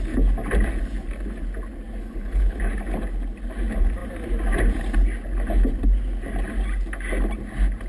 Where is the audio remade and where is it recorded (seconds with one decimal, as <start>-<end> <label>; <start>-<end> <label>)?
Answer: 0.0-2.0 recorded; 2.0-2.6 remade; 2.6-7.9 recorded